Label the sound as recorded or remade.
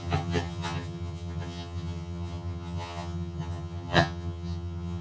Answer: remade